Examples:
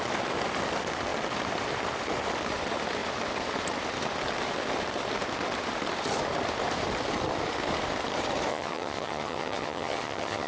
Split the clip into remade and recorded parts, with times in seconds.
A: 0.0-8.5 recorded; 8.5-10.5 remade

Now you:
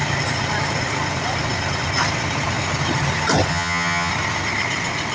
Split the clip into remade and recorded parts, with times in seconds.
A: 0.0-3.5 recorded; 3.5-4.1 remade; 4.1-5.1 recorded